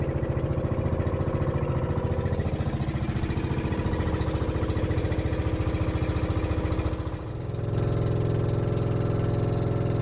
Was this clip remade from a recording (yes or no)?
no